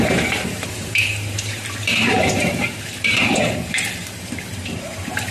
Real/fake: fake